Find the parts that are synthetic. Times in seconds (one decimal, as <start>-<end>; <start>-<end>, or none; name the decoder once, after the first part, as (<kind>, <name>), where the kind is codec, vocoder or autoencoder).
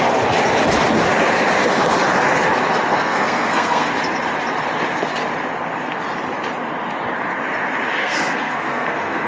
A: 2.9-3.9 (codec, SNAC); 8.0-9.3